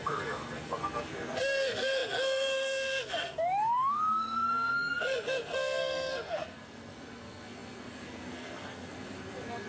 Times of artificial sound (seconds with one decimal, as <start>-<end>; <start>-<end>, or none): 0.0-9.7